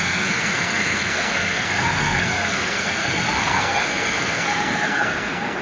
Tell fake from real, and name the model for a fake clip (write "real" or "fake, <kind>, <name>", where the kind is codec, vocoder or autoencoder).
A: fake, codec, SNAC